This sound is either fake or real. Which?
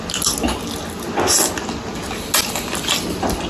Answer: real